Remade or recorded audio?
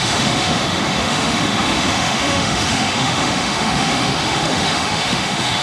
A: remade